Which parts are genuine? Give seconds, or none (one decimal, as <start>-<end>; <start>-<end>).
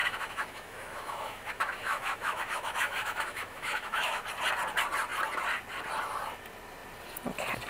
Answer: 4.2-7.7